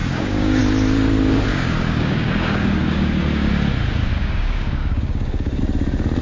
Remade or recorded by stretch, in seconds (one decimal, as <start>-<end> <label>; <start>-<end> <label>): 0.0-0.6 remade; 0.6-1.5 recorded; 1.5-3.5 remade; 3.5-4.1 recorded; 4.1-5.6 remade; 5.6-6.2 recorded